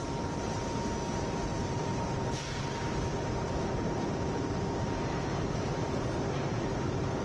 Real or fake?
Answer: fake